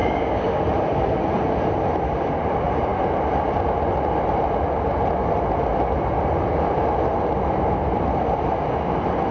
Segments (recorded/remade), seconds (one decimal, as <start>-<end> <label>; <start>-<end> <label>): 0.0-0.6 remade; 0.6-9.3 recorded